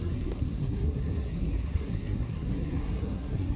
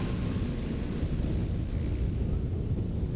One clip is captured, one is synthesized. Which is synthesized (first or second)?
first